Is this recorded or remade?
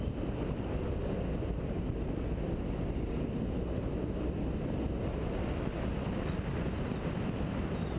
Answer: recorded